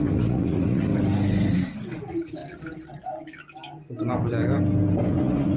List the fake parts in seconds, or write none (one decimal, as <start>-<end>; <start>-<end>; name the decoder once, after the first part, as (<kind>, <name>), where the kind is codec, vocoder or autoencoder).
0.0-0.9 (vocoder, Vocos); 2.0-2.4; 5.1-5.6